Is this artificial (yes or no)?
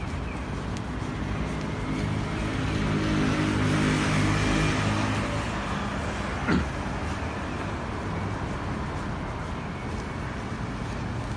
no